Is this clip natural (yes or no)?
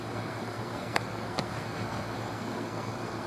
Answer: no